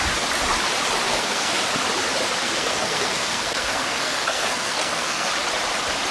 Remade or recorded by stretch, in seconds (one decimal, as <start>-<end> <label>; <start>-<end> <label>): 0.0-1.1 recorded; 1.1-1.6 remade; 1.6-2.4 recorded; 2.4-5.3 remade; 5.3-6.1 recorded